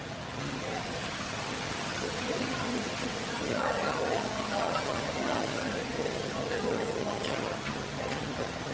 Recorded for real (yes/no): no